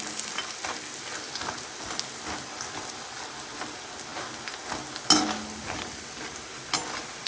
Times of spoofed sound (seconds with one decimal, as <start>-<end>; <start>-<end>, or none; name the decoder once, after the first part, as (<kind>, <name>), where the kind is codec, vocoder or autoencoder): none

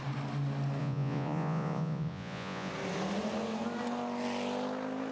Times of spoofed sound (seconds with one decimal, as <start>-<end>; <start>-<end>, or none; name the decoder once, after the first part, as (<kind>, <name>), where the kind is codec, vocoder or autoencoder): 0.8-2.7 (vocoder, Vocos)